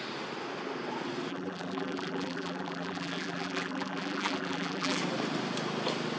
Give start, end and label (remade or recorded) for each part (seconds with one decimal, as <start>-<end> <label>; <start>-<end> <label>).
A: 0.0-1.3 recorded; 1.3-5.0 remade; 5.0-6.2 recorded